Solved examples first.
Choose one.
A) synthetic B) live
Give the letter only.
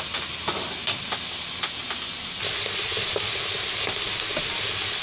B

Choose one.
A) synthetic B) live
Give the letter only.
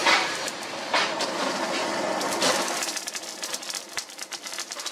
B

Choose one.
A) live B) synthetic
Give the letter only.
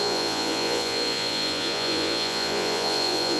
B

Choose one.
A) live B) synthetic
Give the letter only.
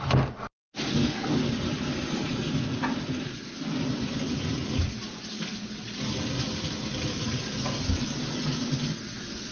A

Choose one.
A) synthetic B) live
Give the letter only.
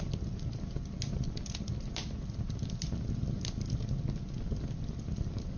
B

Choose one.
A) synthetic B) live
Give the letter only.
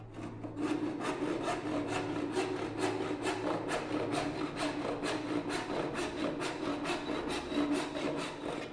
B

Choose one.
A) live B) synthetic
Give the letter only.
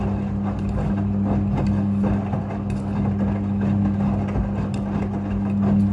A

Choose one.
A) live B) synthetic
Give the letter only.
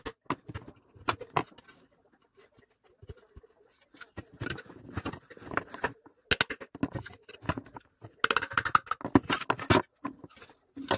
A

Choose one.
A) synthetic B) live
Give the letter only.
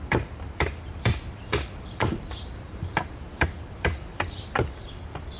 A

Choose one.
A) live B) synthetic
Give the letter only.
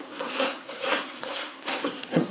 B